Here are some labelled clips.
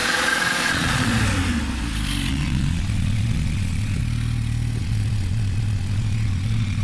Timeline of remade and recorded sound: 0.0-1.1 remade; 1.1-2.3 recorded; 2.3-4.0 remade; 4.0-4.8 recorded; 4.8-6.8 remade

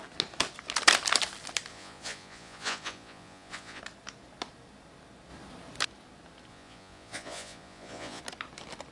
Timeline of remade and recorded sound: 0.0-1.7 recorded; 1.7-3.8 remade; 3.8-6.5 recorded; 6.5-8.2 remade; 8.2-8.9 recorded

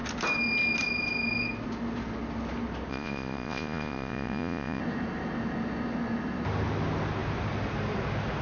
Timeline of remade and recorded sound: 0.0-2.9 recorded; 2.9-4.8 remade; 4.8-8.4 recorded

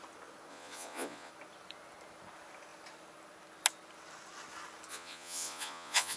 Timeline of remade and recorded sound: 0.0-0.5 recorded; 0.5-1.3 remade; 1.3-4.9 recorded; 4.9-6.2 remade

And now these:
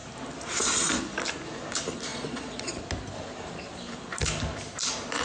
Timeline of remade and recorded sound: 0.0-2.1 recorded; 2.1-2.8 remade; 2.8-5.2 recorded